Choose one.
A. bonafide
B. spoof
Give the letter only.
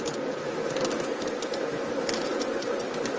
A